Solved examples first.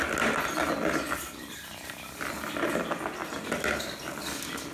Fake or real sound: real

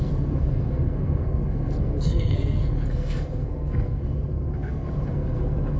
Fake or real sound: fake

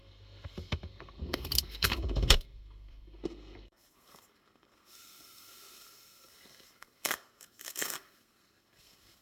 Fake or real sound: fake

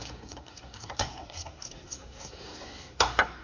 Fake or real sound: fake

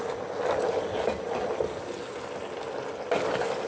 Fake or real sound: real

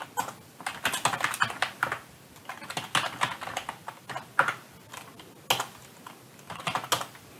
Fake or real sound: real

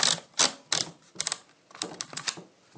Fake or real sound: real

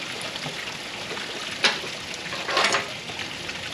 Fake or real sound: real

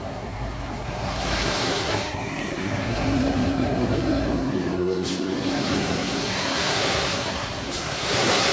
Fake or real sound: fake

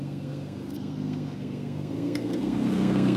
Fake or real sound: fake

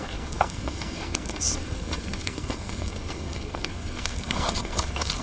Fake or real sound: fake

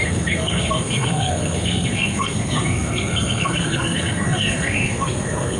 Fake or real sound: fake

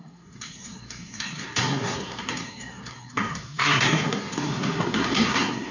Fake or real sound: fake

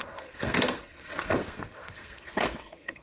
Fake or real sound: fake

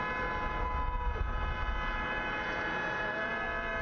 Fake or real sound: real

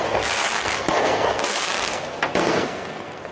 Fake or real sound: fake